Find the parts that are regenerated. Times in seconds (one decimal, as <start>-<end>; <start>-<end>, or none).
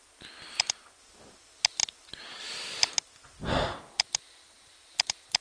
none